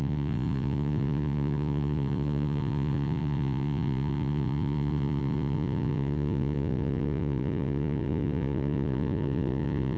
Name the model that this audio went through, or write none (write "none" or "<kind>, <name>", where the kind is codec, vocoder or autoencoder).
vocoder, Vocos